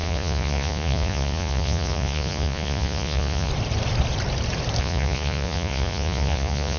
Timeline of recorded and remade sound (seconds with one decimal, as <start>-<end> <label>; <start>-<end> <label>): 0.0-3.5 remade; 3.5-4.8 recorded; 4.8-6.8 remade